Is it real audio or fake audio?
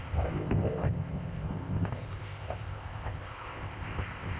fake